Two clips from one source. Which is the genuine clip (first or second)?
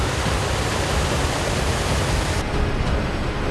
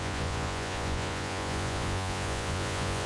first